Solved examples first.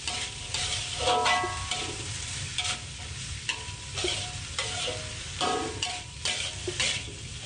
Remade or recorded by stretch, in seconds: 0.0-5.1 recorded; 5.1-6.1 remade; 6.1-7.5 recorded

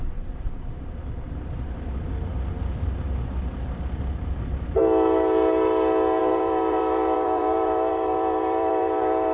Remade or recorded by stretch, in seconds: 0.0-2.3 remade; 2.3-6.2 recorded; 6.2-9.3 remade

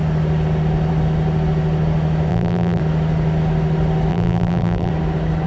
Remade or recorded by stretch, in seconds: 0.0-2.3 recorded; 2.3-2.8 remade; 2.8-4.1 recorded; 4.1-4.9 remade; 4.9-5.5 recorded

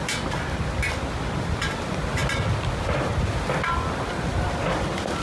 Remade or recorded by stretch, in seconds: 0.0-5.2 recorded

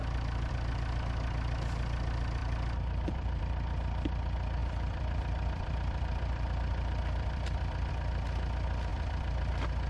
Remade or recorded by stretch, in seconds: 0.0-0.5 remade; 0.5-2.4 recorded; 2.4-3.4 remade; 3.4-4.6 recorded; 4.6-7.9 remade; 7.9-8.9 recorded; 8.9-9.9 remade

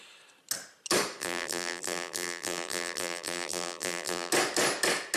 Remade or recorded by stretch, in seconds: 0.0-1.2 recorded; 1.2-4.3 remade; 4.3-5.2 recorded